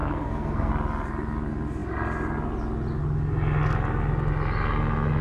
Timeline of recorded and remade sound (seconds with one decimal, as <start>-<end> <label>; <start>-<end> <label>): 0.0-0.7 remade; 0.7-5.2 recorded